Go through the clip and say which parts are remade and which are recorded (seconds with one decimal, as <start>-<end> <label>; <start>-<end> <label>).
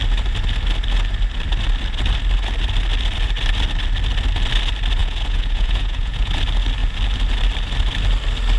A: 0.0-5.0 recorded; 5.0-6.3 remade; 6.3-8.6 recorded